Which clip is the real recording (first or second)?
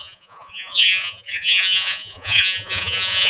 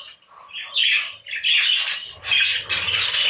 second